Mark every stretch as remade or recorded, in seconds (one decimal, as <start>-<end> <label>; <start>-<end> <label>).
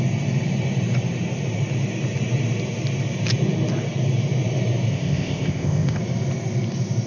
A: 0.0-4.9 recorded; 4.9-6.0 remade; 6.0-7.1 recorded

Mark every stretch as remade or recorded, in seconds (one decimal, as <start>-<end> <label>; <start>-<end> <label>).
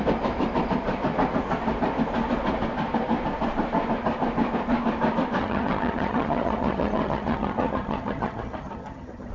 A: 0.0-5.4 recorded; 5.4-9.3 remade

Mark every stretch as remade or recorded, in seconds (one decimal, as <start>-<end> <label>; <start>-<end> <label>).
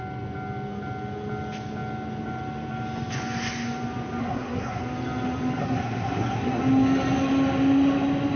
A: 0.0-4.2 recorded; 4.2-4.8 remade; 4.8-5.6 recorded; 5.6-6.6 remade; 6.6-8.4 recorded